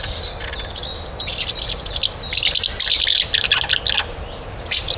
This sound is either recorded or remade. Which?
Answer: recorded